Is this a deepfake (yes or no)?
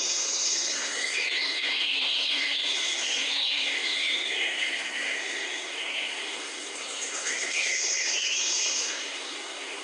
yes